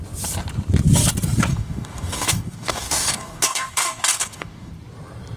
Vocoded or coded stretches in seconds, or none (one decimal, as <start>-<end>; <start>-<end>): 1.5-4.7